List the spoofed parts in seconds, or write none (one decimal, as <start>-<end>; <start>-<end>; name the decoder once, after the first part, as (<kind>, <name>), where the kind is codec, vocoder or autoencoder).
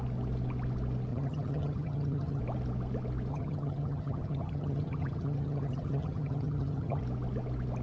1.1-2.4 (vocoder, HiFi-GAN); 3.3-7.0